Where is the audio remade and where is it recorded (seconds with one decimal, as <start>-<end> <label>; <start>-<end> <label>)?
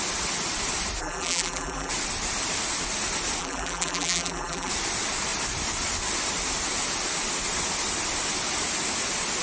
0.0-1.0 recorded; 1.0-1.9 remade; 1.9-3.4 recorded; 3.4-4.7 remade; 4.7-9.4 recorded